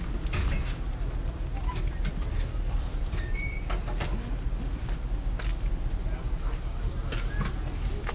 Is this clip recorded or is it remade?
recorded